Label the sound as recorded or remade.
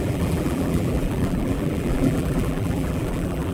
remade